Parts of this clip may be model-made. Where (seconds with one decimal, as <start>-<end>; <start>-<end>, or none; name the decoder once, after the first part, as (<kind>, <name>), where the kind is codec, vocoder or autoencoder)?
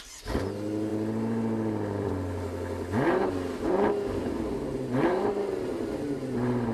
0.9-2.1 (vocoder, BigVGAN v2)